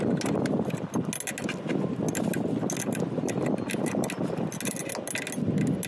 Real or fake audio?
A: real